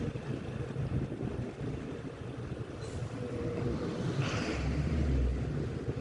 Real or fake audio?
real